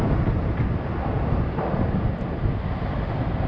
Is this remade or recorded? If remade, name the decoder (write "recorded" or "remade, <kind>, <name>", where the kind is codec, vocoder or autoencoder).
recorded